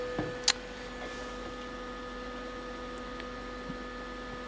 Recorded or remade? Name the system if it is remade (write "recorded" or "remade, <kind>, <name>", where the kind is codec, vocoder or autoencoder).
recorded